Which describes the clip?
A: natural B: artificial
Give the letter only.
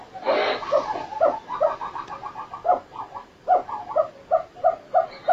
A